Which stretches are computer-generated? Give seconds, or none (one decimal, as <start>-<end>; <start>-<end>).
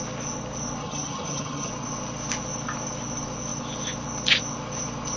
0.8-1.7